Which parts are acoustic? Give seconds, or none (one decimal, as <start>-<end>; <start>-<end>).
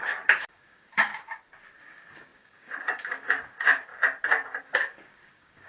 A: 1.1-1.8; 3.9-4.6